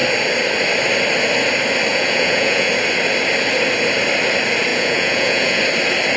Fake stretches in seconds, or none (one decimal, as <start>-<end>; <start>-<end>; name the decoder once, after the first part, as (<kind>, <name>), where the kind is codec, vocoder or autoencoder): 1.9-2.7 (vocoder, Vocos); 4.7-5.6